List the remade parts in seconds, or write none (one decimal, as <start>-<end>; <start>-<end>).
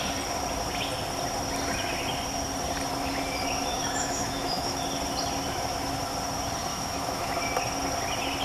3.7-4.8; 6.7-7.4